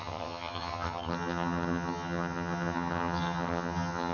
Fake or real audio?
fake